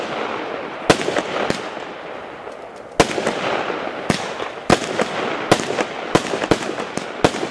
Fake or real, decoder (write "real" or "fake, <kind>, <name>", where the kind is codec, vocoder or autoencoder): real